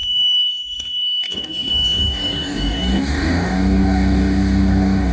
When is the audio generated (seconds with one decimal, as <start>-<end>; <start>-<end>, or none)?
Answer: 0.0-5.1